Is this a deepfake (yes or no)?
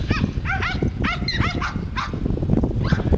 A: no